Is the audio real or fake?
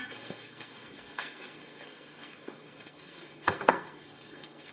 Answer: fake